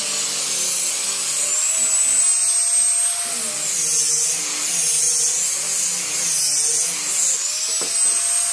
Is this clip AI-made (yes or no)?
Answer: no